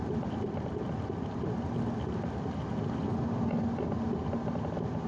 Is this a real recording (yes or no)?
yes